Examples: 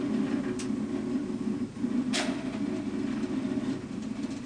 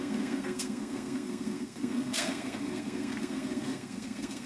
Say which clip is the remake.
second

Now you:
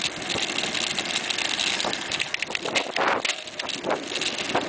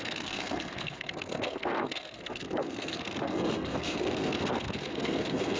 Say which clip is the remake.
second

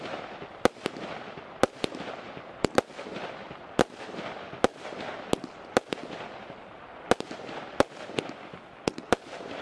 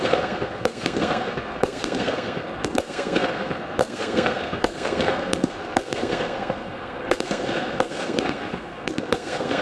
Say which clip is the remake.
second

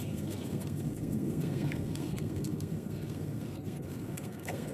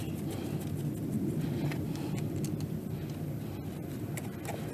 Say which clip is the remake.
first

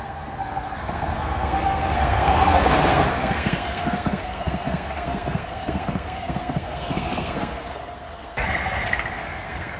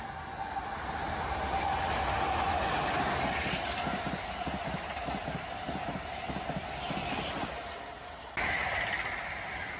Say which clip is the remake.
first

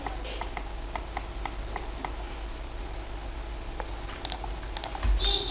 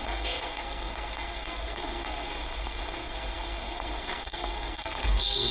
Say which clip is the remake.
second